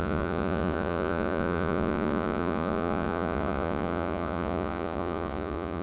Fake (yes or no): yes